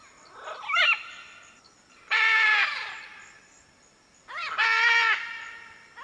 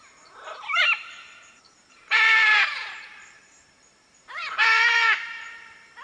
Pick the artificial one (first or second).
second